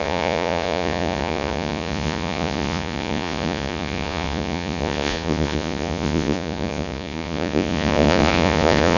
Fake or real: fake